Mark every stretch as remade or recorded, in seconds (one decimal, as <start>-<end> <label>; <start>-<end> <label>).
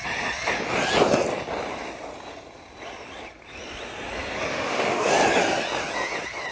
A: 0.0-4.5 recorded; 4.5-5.1 remade; 5.1-6.5 recorded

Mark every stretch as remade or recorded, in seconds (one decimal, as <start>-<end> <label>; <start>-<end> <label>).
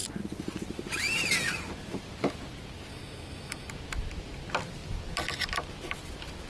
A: 0.0-2.9 recorded; 2.9-3.7 remade; 3.7-6.5 recorded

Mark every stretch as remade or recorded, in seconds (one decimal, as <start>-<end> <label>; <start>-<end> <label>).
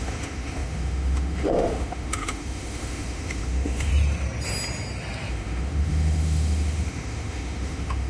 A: 0.0-3.9 remade; 3.9-5.3 recorded; 5.3-8.1 remade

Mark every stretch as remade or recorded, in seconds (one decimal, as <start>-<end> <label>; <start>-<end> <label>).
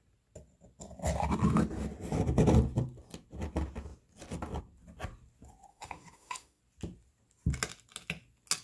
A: 0.0-5.7 recorded; 5.7-6.6 remade; 6.6-8.6 recorded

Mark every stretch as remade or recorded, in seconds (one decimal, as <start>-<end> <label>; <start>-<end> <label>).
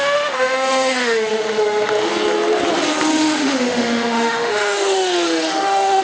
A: 0.0-2.1 remade; 2.1-3.1 recorded; 3.1-6.0 remade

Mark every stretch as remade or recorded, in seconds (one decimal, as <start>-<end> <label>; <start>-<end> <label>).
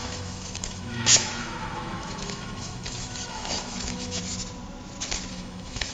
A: 0.0-4.2 remade; 4.2-5.3 recorded; 5.3-5.9 remade